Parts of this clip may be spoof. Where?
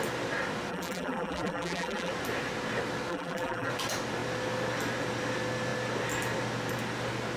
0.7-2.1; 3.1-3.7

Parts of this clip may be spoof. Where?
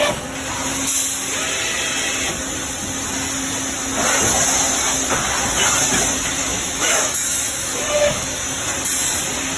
6.5-8.6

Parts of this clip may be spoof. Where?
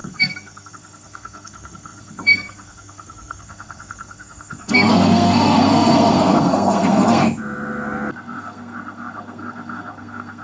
0.0-7.2; 8.1-10.4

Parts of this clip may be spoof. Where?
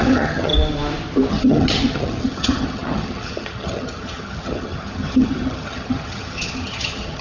0.0-0.5; 1.3-7.2